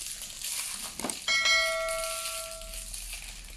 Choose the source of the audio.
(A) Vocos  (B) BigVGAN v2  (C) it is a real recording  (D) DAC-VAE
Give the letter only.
C